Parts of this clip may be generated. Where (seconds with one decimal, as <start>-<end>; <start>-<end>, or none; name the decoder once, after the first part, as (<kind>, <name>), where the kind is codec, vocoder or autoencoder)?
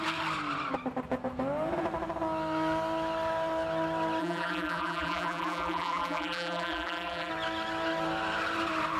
4.2-7.3 (vocoder, BigVGAN v2)